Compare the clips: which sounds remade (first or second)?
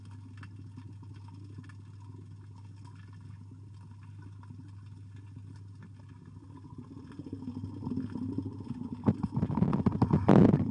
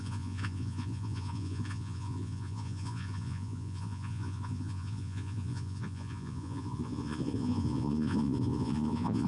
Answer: second